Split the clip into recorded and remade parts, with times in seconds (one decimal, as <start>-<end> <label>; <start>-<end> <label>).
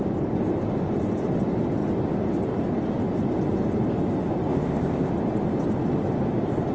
0.0-4.5 recorded; 4.5-5.1 remade; 5.1-6.7 recorded